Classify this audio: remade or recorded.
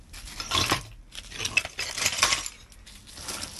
recorded